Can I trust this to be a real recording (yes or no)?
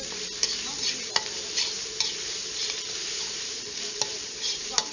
no